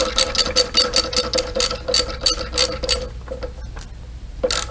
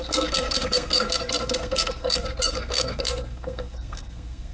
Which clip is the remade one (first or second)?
second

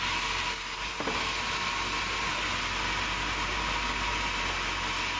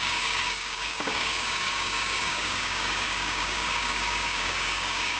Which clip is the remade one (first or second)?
second